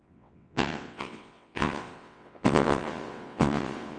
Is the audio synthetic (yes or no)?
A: yes